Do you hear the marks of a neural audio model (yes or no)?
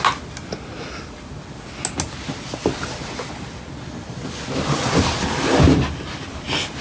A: no